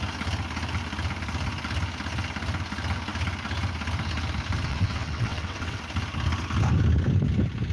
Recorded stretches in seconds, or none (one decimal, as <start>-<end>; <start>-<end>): 0.0-4.7; 5.8-7.7